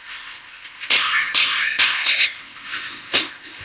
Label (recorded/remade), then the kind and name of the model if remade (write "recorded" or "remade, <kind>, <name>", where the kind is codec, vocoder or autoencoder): remade, codec, ZipCodec